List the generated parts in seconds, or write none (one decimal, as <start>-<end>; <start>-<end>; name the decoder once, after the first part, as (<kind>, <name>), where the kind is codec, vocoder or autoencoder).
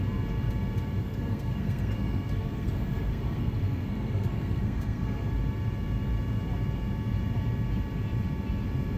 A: 1.0-5.3 (codec, SNAC)